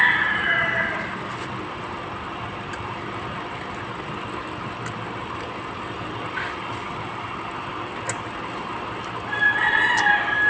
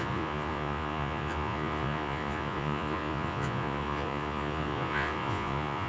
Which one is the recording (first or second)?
first